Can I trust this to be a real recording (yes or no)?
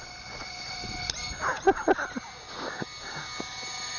yes